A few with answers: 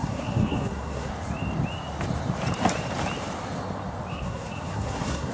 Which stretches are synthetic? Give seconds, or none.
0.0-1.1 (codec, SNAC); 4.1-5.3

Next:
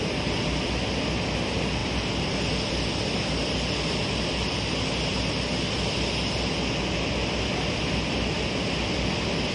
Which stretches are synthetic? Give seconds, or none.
none